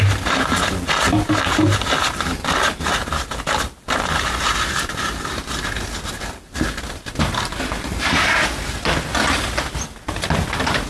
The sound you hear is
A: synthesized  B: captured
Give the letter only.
B